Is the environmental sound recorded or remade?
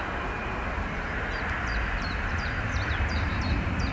remade